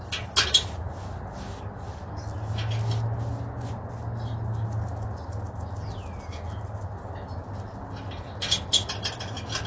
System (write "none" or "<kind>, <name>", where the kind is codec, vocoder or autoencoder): none